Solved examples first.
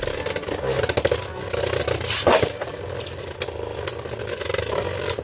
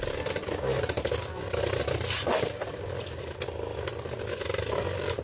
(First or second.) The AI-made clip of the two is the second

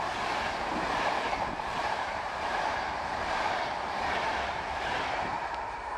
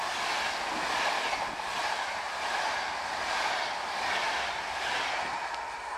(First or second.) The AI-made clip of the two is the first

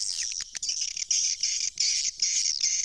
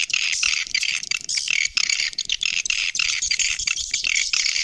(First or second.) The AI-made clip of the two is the second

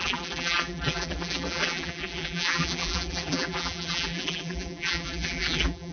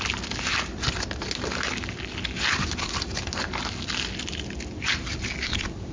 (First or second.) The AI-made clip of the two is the first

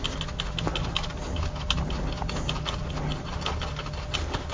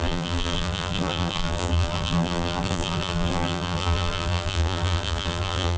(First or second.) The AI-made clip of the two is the second